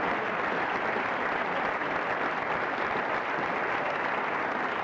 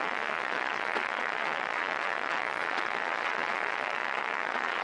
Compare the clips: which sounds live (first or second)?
first